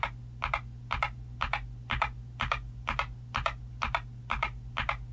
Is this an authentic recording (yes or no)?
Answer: yes